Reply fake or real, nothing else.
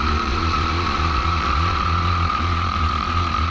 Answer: fake